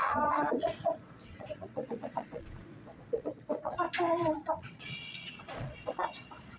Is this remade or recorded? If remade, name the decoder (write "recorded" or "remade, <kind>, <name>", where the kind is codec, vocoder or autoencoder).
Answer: remade, vocoder, Vocos